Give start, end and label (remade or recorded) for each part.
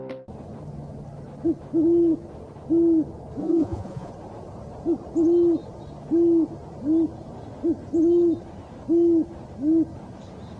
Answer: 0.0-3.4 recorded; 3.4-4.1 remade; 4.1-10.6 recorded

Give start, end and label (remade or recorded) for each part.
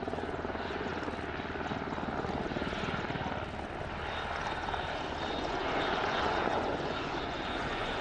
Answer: 0.0-0.9 remade; 0.9-5.3 recorded; 5.3-8.0 remade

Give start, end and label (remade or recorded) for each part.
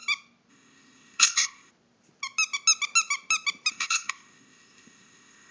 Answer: 0.0-0.5 recorded; 0.5-1.7 remade; 1.7-3.7 recorded; 3.7-5.5 remade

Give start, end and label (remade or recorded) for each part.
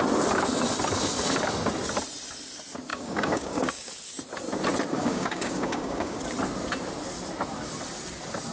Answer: 0.0-2.9 recorded; 2.9-3.9 remade; 3.9-4.9 recorded; 4.9-6.2 remade; 6.2-8.5 recorded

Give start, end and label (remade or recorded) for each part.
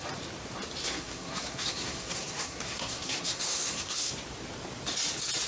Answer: 0.0-0.8 recorded; 0.8-4.1 remade; 4.1-5.5 recorded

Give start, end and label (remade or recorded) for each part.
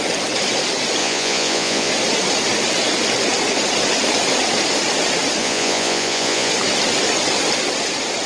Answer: 0.0-1.0 recorded; 1.0-1.9 remade; 1.9-5.4 recorded; 5.4-6.5 remade; 6.5-8.3 recorded